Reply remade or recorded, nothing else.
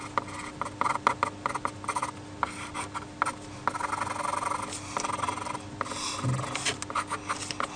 recorded